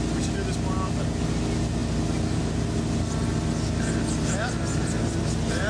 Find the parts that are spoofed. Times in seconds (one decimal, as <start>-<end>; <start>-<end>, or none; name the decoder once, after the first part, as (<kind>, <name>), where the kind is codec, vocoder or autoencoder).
none